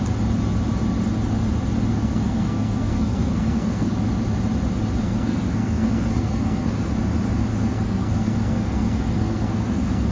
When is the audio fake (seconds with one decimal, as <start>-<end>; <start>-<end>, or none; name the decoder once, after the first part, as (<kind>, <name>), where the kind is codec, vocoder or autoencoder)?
1.9-3.9 (codec, SNAC); 5.0-6.9; 7.5-10.1